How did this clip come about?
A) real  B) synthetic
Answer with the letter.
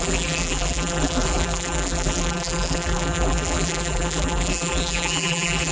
B